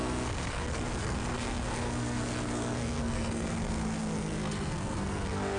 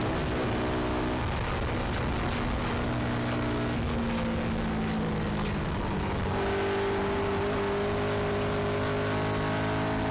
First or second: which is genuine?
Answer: second